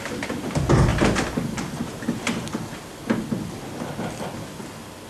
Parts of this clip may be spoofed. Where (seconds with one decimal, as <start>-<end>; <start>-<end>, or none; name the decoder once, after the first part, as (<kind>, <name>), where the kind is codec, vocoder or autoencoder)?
none